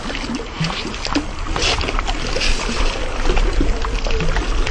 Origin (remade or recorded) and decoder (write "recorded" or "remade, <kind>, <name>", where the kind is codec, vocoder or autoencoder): recorded